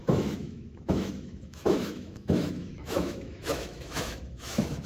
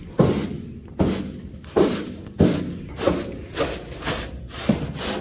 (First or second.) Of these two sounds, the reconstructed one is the first